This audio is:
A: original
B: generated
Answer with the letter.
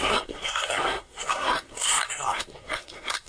B